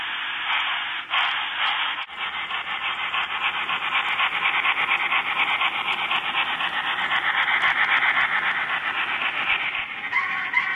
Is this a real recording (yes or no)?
yes